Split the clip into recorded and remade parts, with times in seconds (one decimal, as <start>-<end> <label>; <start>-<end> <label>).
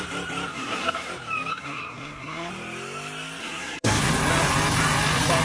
0.0-0.5 recorded; 0.5-1.1 remade; 1.1-1.5 recorded; 1.5-2.5 remade; 2.5-3.4 recorded; 3.4-4.1 remade; 4.1-5.4 recorded